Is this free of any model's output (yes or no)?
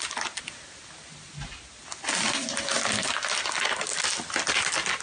yes